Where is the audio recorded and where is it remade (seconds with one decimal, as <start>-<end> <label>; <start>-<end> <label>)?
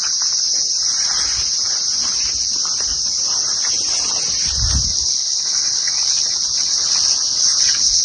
0.0-4.9 recorded; 4.9-8.0 remade